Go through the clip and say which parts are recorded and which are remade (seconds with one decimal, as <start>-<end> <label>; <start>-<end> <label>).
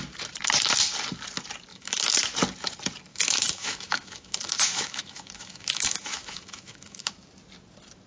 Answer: 0.0-1.7 recorded; 1.7-2.2 remade; 2.2-3.1 recorded; 3.1-7.1 remade; 7.1-8.1 recorded